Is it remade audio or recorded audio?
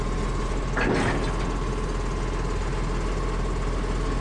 recorded